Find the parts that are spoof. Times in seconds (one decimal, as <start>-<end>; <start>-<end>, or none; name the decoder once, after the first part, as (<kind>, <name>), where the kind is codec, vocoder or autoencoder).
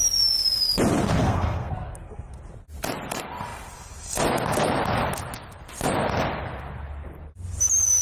1.2-2.4 (codec, SNAC)